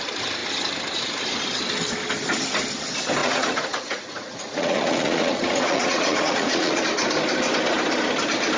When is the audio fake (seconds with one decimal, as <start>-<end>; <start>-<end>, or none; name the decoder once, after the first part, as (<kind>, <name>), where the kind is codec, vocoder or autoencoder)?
3.2-6.8 (vocoder, Vocos)